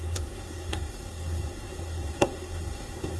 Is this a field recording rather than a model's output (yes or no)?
no